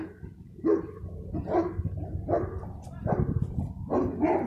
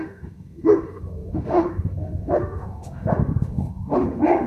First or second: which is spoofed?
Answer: second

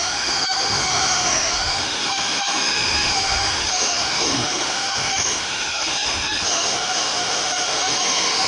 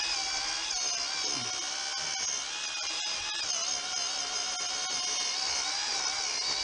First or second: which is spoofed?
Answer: first